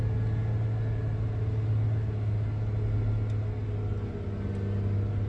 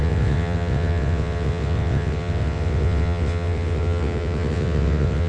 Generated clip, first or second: second